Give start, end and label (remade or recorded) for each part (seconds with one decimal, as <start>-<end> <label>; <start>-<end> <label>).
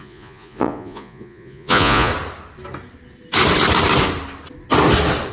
0.0-2.1 remade; 2.1-5.3 recorded